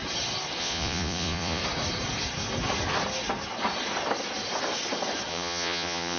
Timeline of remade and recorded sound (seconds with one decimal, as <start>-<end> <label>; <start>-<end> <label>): 0.0-0.6 recorded; 0.6-1.6 remade; 1.6-5.3 recorded; 5.3-6.2 remade

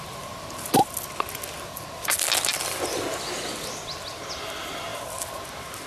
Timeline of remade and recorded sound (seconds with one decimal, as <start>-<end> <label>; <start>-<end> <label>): 0.0-5.9 recorded

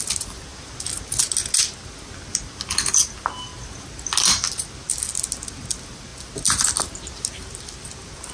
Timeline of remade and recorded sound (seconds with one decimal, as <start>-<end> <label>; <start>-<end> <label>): 0.0-8.3 recorded

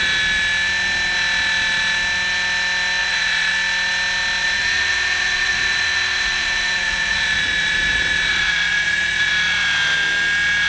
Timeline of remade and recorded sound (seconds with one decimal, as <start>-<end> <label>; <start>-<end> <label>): 0.0-3.0 recorded; 3.0-3.5 remade; 3.5-4.4 recorded; 4.4-9.3 remade; 9.3-10.7 recorded

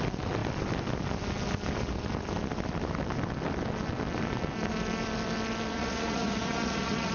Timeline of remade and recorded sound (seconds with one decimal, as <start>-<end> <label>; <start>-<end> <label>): 0.0-5.7 recorded; 5.7-7.1 remade